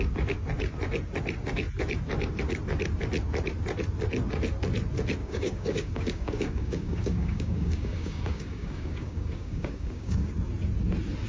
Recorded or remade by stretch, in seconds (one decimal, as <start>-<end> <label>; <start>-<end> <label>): 0.0-5.2 recorded; 5.2-10.3 remade; 10.3-11.3 recorded